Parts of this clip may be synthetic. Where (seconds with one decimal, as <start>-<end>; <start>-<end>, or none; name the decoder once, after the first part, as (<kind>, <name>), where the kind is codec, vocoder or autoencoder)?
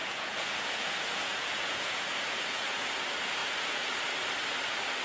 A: 0.0-3.0 (vocoder, Vocos); 3.4-4.0